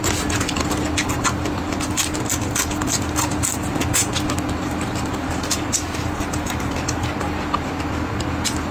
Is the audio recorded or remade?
recorded